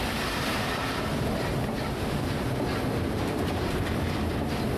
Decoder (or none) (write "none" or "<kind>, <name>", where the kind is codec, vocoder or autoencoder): none